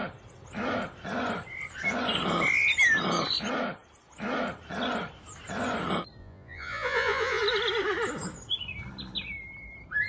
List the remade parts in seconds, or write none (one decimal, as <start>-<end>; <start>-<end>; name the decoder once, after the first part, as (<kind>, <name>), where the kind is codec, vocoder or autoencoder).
6.2-7.4 (vocoder, Vocos)